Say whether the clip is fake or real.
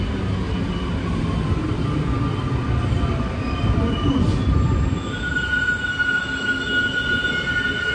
real